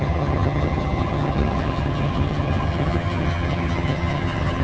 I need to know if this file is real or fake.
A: fake